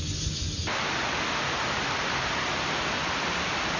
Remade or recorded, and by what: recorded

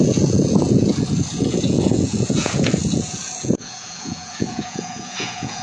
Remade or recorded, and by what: remade, vocoder, Vocos